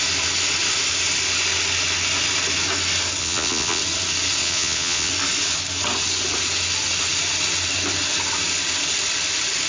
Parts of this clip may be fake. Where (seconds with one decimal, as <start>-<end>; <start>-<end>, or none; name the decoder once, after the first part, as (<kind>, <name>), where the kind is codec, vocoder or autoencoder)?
3.2-3.8 (vocoder, Vocos); 4.4-5.1